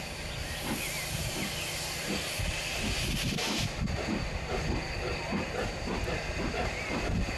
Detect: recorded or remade recorded